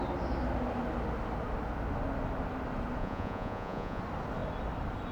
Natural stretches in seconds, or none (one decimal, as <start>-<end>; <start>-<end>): 0.0-3.0; 4.0-5.1

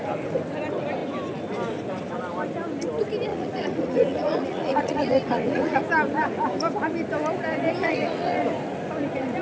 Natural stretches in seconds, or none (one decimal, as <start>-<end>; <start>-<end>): 0.0-3.3; 5.8-7.8; 8.4-9.4

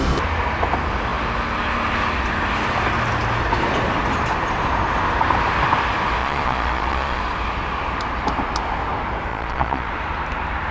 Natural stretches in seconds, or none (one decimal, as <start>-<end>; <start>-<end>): 0.0-6.2; 7.2-9.3; 9.9-10.7

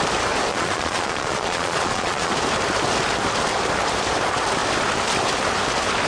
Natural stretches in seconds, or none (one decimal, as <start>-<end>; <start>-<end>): 0.0-0.5; 2.3-6.1